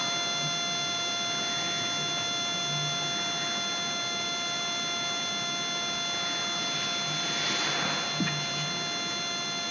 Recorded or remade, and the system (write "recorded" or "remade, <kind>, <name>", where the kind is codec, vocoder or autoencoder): recorded